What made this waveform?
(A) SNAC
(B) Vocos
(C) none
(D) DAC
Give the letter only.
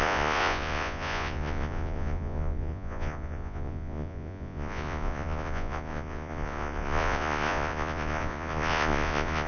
B